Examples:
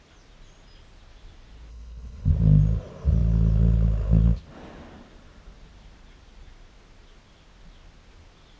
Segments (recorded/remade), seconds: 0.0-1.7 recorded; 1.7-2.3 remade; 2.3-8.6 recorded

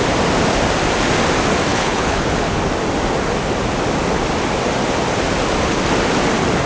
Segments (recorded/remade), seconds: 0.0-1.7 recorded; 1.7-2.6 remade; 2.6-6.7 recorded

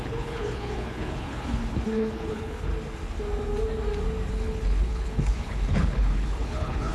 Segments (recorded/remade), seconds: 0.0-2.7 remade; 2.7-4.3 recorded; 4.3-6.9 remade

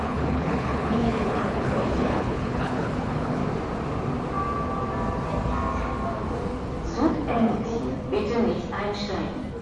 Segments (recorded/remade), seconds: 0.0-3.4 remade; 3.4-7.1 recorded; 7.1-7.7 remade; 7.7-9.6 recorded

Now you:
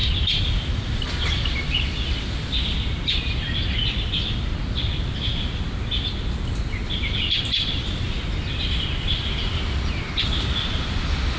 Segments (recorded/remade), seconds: 0.0-11.4 recorded

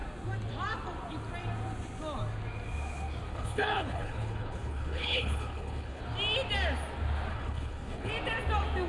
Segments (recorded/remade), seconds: 0.0-3.3 recorded; 3.3-6.0 remade; 6.0-7.3 recorded; 7.3-8.1 remade; 8.1-8.9 recorded

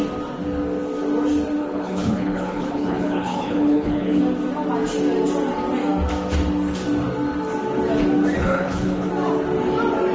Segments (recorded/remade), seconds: 0.0-1.6 recorded; 1.6-4.2 remade; 4.2-8.4 recorded; 8.4-9.1 remade; 9.1-10.1 recorded